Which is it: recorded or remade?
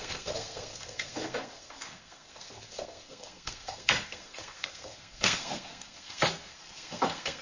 remade